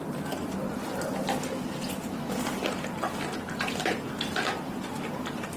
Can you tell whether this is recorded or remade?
recorded